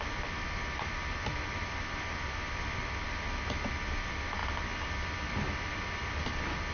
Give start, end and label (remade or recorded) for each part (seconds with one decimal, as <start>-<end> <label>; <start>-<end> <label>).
0.0-6.7 recorded